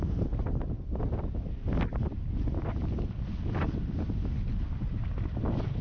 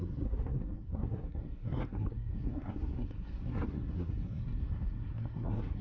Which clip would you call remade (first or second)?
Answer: second